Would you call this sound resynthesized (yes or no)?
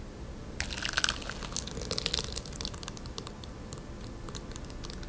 no